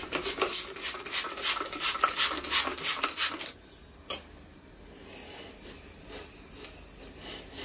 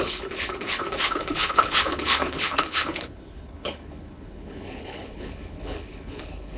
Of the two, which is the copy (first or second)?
second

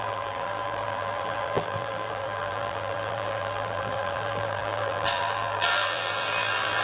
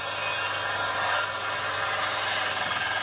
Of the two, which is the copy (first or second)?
first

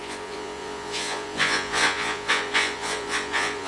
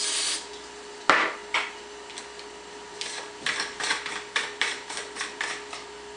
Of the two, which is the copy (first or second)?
first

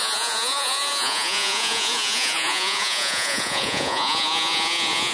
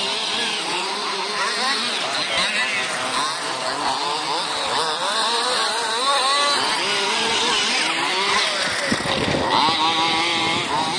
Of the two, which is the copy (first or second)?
first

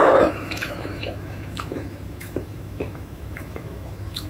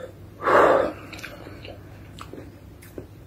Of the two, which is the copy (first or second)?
first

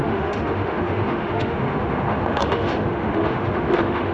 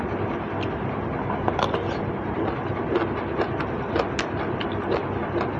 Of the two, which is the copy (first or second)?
first